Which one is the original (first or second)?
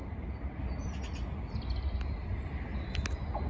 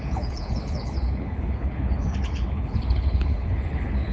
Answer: first